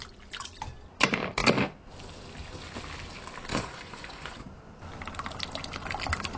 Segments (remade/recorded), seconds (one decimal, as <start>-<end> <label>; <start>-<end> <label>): 0.0-3.5 recorded; 3.5-4.4 remade; 4.4-6.4 recorded